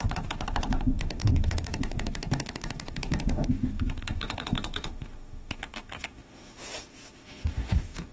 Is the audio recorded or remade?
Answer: remade